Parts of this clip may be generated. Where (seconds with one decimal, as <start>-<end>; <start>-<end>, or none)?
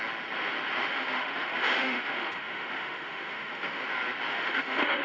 0.8-3.8; 4.3-5.0